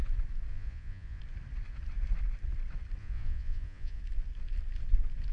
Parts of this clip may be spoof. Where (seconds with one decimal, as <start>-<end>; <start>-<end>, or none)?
0.5-1.2; 3.0-4.0